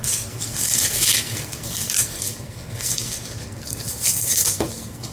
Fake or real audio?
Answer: fake